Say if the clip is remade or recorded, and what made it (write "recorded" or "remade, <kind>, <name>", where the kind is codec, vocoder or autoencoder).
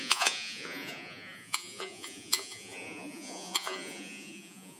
remade, vocoder, Vocos